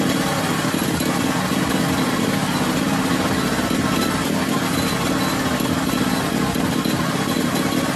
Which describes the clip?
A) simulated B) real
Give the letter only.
B